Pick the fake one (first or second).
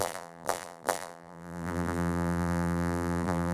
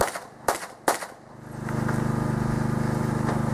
first